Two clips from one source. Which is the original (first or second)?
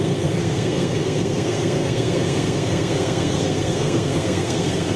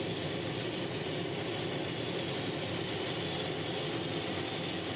second